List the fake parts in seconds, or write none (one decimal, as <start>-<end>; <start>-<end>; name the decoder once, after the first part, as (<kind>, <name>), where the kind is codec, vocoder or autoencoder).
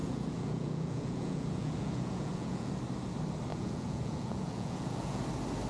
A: 0.0-2.7 (vocoder, Vocos); 3.5-5.2